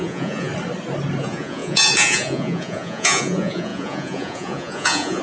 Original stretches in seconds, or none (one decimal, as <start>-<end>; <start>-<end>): 0.5-1.2